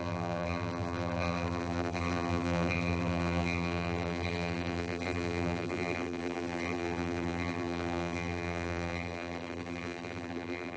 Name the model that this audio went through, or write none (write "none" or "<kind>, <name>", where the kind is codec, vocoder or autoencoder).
vocoder, BigVGAN v2